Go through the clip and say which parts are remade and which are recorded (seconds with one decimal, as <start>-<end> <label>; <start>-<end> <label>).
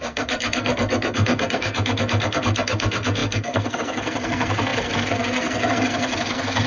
0.0-6.7 remade